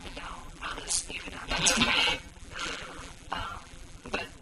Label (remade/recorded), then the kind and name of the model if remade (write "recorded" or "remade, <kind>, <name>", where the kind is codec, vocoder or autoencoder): remade, vocoder, BigVGAN v2